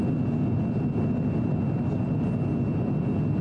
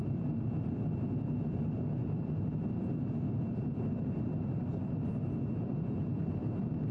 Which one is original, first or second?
first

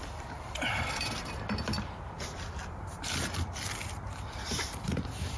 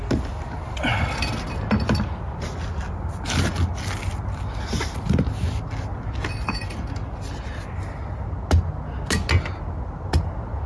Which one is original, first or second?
second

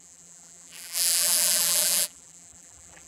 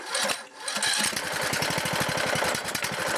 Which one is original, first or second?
second